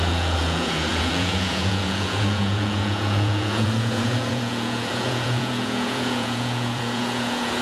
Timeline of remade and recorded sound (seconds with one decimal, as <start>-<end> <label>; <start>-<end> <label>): 0.0-7.6 remade